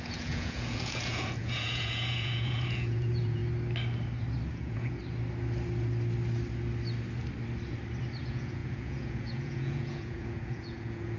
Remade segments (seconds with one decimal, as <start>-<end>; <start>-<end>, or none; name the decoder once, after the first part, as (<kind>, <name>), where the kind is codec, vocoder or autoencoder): 0.0-3.4 (vocoder, Vocos); 4.5-5.0; 8.2-11.2